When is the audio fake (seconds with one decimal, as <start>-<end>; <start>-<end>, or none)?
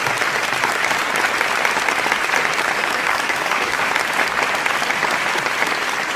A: 2.8-3.8